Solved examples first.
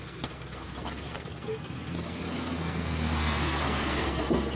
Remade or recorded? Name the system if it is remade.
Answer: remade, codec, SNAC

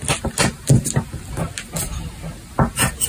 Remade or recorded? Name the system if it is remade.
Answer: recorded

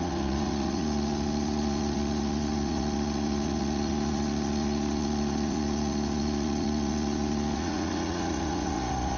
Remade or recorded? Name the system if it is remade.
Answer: remade, vocoder, Vocos